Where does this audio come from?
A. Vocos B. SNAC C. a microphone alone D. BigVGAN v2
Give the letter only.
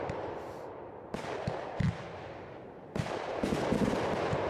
C